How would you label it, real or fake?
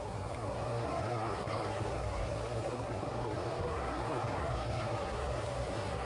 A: fake